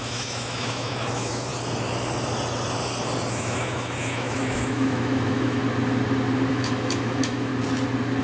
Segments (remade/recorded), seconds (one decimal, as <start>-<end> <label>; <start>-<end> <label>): 0.0-1.5 remade; 1.5-3.3 recorded; 3.3-5.6 remade; 5.6-6.5 recorded; 6.5-7.5 remade; 7.5-8.2 recorded